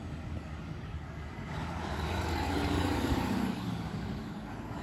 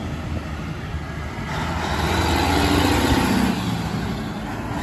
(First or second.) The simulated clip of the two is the first